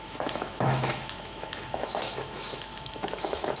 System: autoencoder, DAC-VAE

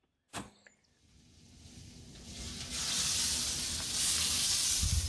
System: none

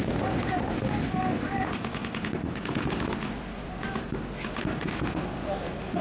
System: none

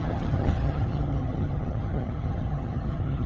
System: vocoder, HiFi-GAN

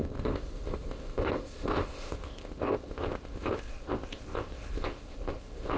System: codec, ZipCodec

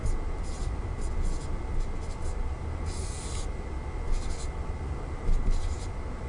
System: none